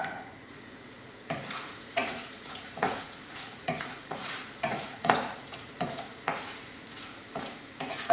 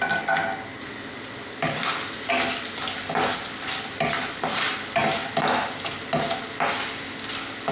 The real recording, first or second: second